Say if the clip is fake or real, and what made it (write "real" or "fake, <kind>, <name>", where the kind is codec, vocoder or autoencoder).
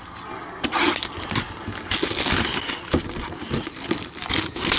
real